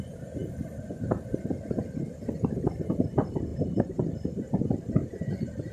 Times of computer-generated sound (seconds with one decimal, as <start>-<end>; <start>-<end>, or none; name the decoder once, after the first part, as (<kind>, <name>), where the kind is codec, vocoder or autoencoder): 3.5-5.7 (vocoder, BigVGAN v2)

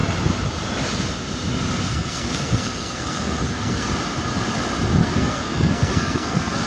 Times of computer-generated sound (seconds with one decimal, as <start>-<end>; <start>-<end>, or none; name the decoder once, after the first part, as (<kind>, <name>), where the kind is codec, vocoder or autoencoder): 1.9-3.9 (codec, SNAC); 5.0-6.7

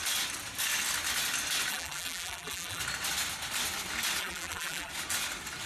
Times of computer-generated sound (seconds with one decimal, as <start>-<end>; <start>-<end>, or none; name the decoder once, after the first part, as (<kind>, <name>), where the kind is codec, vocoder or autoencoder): 1.7-2.8 (vocoder, BigVGAN v2); 4.2-4.9

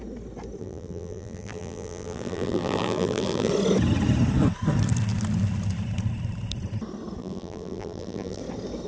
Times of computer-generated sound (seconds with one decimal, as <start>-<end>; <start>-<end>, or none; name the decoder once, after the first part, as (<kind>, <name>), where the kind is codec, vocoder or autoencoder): 0.6-3.5 (vocoder, BigVGAN v2); 7.2-8.4

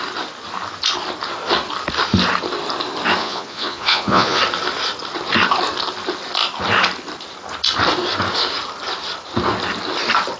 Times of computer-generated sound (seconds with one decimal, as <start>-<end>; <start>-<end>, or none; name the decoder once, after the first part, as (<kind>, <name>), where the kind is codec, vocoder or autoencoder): 3.2-4.4 (vocoder, Vocos)

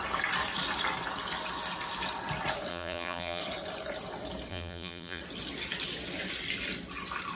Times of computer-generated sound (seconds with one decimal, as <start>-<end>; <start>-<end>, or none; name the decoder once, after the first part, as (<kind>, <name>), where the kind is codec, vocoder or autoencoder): 2.7-3.4 (vocoder, BigVGAN v2); 4.5-5.2

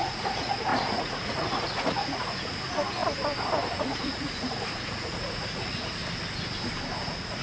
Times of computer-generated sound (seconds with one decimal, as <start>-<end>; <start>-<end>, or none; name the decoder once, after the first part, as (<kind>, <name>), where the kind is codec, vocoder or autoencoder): 0.0-3.0 (vocoder, Vocos); 3.8-6.0; 7.0-7.4

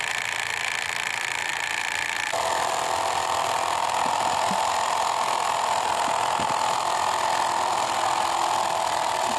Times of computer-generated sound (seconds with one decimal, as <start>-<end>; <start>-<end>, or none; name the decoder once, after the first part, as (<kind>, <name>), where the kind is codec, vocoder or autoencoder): none